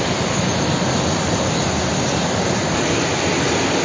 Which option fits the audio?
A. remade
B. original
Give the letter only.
B